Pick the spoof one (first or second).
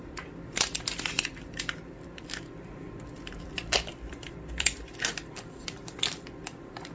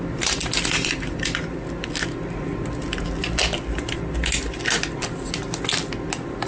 first